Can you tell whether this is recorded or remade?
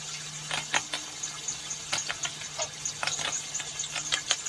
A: recorded